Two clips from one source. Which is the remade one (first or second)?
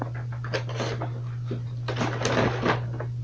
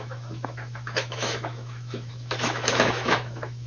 second